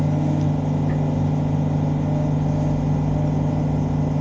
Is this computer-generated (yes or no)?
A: no